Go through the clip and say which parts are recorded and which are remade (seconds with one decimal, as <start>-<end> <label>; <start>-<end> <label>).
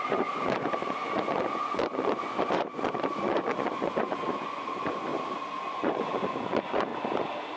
0.0-5.1 remade; 5.1-5.7 recorded; 5.7-6.9 remade; 6.9-7.6 recorded